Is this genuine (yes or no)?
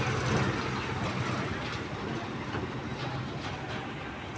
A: yes